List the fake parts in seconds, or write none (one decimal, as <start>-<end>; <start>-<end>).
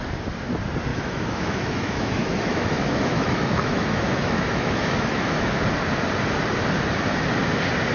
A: 0.9-5.5